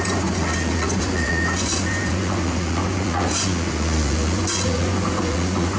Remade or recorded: remade